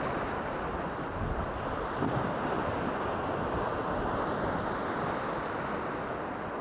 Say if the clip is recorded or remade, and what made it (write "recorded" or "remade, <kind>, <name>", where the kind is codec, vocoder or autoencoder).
recorded